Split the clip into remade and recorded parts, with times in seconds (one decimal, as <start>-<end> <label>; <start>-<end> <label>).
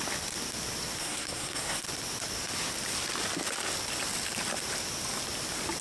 0.0-1.0 recorded; 1.0-1.8 remade; 1.8-5.8 recorded